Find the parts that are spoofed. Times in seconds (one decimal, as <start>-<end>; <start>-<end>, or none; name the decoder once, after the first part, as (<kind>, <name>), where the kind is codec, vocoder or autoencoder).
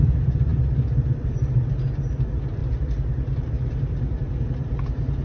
none